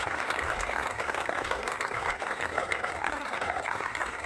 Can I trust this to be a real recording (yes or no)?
no